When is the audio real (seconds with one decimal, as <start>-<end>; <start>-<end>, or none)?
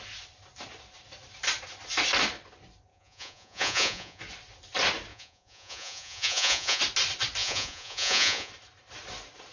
0.0-2.9; 4.2-5.1; 6.8-7.4; 8.5-9.5